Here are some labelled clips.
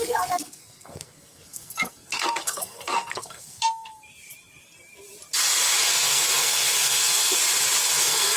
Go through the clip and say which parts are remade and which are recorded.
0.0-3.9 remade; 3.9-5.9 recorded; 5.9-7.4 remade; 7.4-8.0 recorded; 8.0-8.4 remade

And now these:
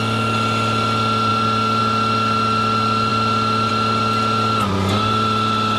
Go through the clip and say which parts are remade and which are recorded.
0.0-5.8 recorded